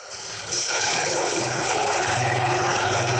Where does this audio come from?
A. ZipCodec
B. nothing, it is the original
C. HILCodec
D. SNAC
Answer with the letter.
C